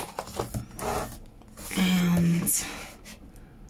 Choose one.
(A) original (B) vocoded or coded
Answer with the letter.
A